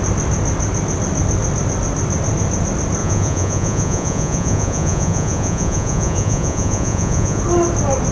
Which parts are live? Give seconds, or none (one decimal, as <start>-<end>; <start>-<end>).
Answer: 0.0-3.0; 7.4-8.1